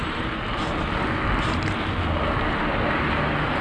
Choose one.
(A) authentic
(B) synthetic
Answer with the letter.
A